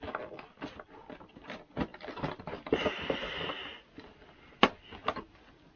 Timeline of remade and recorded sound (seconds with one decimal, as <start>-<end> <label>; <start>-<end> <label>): 0.0-5.8 recorded